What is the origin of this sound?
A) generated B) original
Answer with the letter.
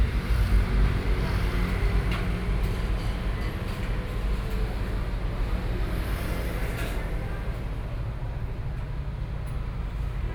B